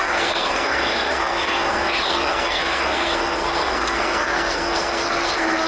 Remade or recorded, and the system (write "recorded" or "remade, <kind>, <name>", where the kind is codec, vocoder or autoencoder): remade, codec, SNAC